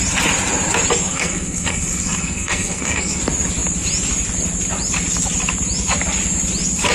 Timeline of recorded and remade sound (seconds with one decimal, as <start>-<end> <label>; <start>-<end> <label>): 0.0-1.1 recorded; 1.1-3.2 remade; 3.2-6.9 recorded